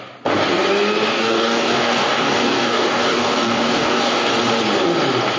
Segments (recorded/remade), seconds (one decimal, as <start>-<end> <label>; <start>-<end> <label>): 0.0-1.1 recorded; 1.1-4.3 remade; 4.3-5.4 recorded